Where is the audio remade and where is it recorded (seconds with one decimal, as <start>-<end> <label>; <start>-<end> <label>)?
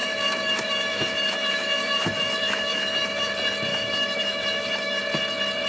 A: 0.0-3.3 remade; 3.3-3.7 recorded; 3.7-5.0 remade; 5.0-5.7 recorded